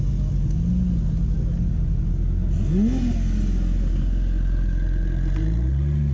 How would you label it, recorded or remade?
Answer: recorded